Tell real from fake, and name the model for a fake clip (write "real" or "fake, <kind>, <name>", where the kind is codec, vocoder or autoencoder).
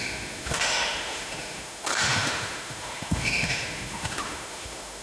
fake, autoencoder, DAC-VAE